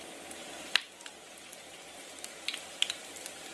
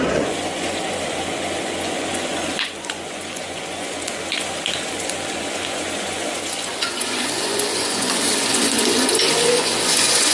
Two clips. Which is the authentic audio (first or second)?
first